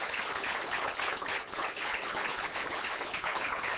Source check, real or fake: fake